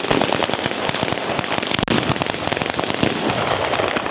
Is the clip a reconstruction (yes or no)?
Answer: no